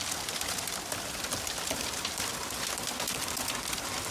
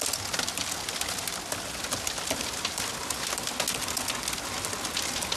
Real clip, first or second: second